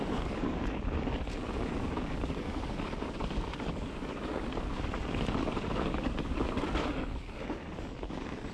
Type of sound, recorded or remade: remade